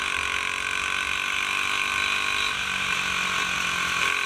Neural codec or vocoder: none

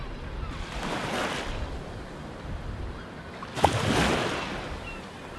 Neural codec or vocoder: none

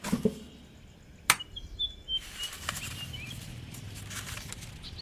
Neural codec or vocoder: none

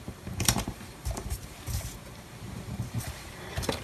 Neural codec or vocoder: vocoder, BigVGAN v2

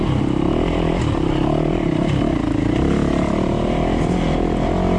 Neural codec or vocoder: none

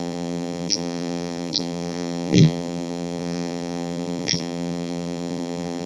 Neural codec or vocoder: vocoder, BigVGAN v2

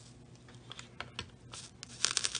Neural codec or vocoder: none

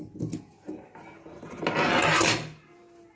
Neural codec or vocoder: none